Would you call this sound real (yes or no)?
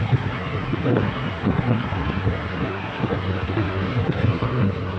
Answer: no